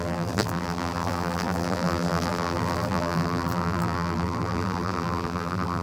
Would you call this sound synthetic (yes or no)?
yes